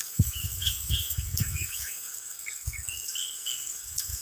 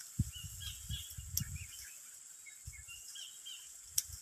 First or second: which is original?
second